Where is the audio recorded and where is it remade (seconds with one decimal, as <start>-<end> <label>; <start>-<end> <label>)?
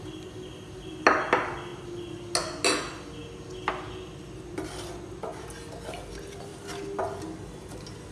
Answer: 0.0-8.1 recorded